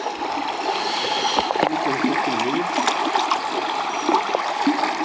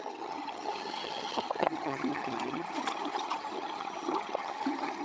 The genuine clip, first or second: first